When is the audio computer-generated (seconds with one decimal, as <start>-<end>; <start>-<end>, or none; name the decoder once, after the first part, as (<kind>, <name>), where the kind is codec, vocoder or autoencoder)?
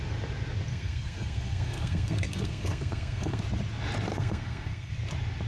0.7-3.4 (codec, SNAC); 4.1-4.9